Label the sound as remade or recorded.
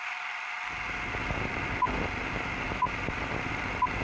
recorded